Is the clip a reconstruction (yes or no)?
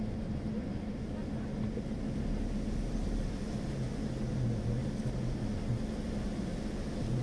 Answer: no